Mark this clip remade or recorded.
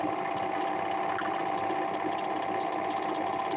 recorded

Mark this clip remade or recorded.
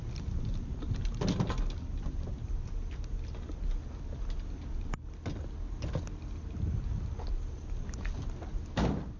recorded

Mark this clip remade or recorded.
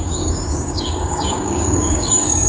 remade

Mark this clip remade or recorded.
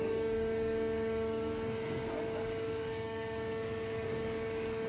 remade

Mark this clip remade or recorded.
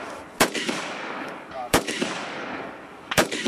remade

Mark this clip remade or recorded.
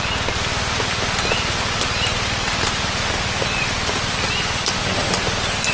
recorded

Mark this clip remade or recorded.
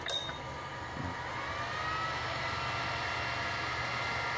recorded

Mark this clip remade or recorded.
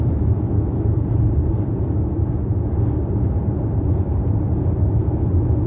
recorded